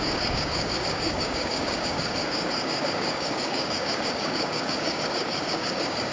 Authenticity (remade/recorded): remade